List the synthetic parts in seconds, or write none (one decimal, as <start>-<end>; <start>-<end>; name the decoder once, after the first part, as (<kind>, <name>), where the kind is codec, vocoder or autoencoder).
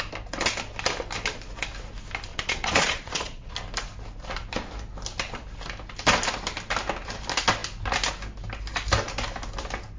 2.3-3.5 (vocoder, Vocos)